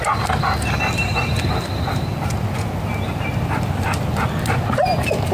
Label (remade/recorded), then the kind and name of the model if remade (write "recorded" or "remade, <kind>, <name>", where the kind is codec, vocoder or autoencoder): recorded